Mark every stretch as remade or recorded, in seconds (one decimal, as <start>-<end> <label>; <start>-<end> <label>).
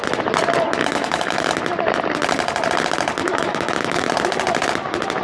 0.0-0.8 recorded; 0.8-1.5 remade; 1.5-3.2 recorded; 3.2-4.1 remade; 4.1-5.2 recorded